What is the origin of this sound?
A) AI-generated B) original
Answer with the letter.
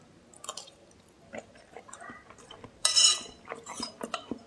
A